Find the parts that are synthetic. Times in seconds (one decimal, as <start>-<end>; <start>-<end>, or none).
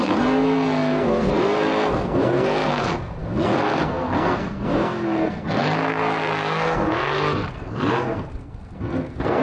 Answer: 0.0-9.4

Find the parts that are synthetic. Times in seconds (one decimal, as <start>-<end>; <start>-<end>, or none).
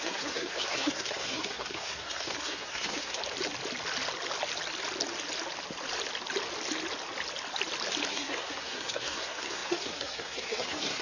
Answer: 0.0-3.2; 8.1-11.0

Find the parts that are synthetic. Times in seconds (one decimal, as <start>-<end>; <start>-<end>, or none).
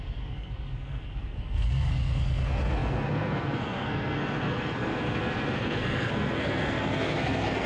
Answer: 0.0-7.7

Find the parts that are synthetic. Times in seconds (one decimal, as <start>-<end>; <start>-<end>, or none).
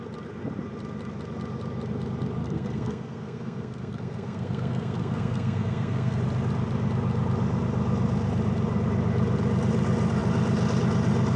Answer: 2.4-6.2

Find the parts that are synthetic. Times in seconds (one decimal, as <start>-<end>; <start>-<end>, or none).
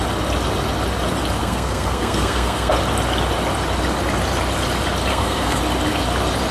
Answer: 1.4-2.7; 5.1-5.6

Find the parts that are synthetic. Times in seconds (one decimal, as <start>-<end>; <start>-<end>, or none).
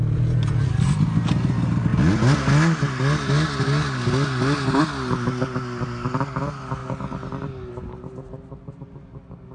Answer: none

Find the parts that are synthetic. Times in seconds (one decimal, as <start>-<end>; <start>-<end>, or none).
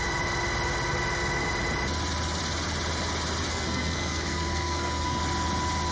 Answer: 3.5-5.2